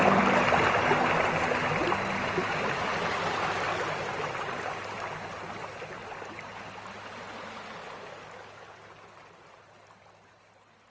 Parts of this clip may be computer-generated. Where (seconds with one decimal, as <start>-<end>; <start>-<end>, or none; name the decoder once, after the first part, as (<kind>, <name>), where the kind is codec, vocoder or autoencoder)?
none